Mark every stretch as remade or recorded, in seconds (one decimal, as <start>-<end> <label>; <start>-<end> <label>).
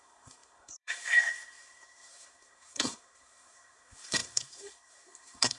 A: 0.0-5.6 remade